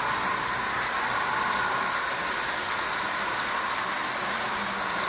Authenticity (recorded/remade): recorded